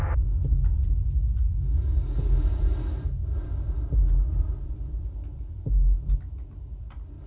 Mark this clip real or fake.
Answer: real